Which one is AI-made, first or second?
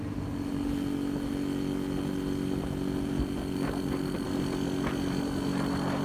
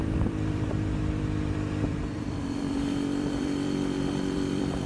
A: second